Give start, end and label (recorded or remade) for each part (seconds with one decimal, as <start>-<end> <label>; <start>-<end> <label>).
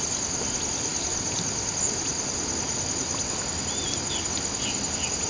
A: 0.0-5.3 recorded